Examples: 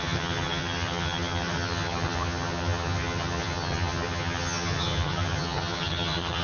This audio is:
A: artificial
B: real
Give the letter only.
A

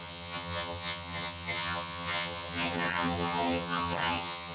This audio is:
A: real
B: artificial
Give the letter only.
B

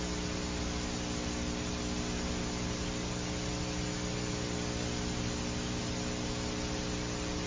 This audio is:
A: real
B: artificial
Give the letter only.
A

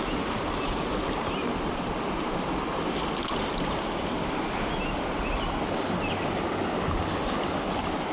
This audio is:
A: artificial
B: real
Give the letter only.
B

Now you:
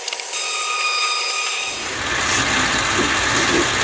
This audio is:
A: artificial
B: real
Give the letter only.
B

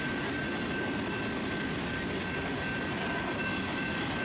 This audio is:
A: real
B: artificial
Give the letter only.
A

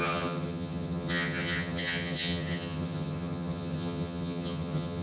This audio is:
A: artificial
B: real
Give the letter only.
A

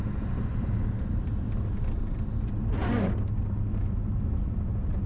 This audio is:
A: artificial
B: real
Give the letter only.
B